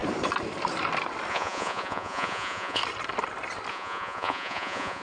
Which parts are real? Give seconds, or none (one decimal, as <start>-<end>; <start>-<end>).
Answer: 0.0-1.3; 2.8-3.7